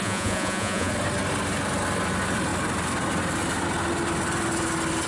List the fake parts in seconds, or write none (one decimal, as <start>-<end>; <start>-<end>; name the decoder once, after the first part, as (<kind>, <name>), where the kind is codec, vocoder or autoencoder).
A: 0.0-0.9 (vocoder, Vocos)